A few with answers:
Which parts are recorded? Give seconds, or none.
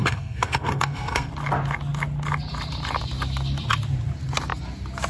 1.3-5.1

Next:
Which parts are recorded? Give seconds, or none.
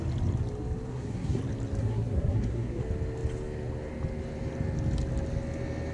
0.0-0.9; 1.4-1.8; 2.8-5.9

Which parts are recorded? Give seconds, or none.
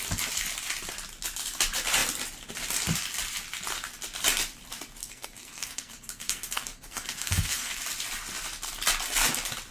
0.0-5.0; 7.8-9.7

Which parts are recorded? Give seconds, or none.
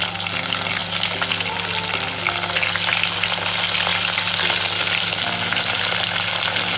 0.0-6.8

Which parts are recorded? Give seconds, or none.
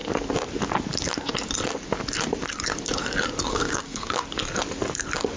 0.0-3.5; 4.1-5.4